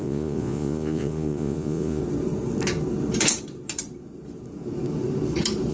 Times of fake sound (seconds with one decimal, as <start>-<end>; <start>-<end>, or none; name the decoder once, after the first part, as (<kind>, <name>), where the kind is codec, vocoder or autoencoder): 0.0-2.0 (vocoder, Vocos)